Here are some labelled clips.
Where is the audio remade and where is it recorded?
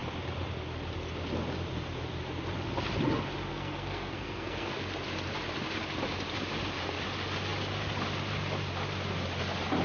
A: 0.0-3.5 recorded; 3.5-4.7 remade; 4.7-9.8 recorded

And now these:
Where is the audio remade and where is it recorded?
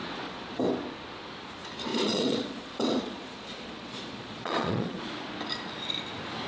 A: 0.0-0.6 remade; 0.6-1.9 recorded; 1.9-5.1 remade; 5.1-6.5 recorded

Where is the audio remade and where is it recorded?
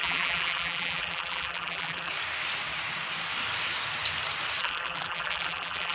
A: 0.0-2.1 remade; 2.1-4.6 recorded; 4.6-5.9 remade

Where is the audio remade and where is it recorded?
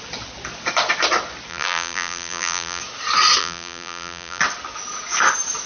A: 0.0-1.5 recorded; 1.5-2.8 remade; 2.8-3.4 recorded; 3.4-4.4 remade; 4.4-5.7 recorded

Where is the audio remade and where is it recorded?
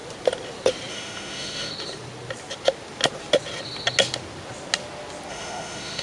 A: 0.0-0.9 recorded; 0.9-1.7 remade; 1.7-5.3 recorded; 5.3-6.0 remade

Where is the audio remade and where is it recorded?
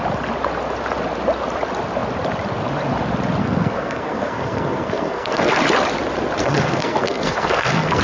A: 0.0-3.4 recorded; 3.4-5.5 remade; 5.5-6.4 recorded; 6.4-8.0 remade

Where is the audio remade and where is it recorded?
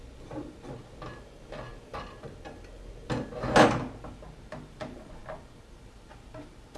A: 0.0-6.8 recorded